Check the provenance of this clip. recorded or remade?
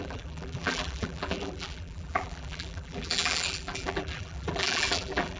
remade